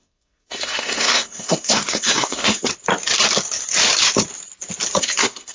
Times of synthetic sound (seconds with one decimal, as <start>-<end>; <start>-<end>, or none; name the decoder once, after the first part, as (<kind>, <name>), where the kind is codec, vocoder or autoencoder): 0.0-2.7 (codec, SNAC); 5.0-5.5